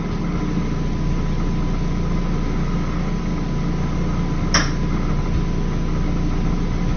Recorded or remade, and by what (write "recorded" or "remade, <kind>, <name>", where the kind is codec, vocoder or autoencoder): recorded